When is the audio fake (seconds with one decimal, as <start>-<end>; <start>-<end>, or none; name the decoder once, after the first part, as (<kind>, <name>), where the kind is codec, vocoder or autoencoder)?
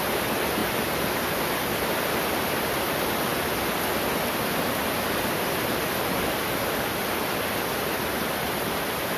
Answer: none